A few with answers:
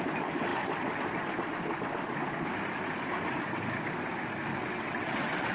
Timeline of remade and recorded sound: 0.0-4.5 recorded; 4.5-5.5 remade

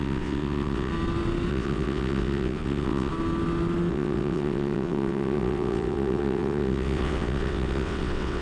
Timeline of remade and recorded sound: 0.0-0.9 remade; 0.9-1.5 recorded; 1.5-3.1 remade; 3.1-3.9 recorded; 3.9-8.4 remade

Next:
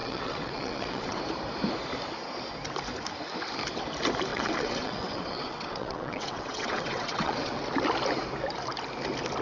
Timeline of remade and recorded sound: 0.0-1.2 remade; 1.2-4.3 recorded; 4.3-7.6 remade; 7.6-9.4 recorded

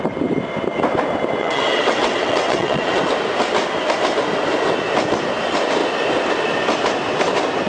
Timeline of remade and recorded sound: 0.0-1.4 recorded; 1.4-3.0 remade; 3.0-7.7 recorded